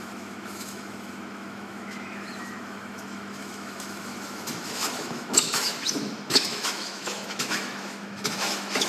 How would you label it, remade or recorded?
remade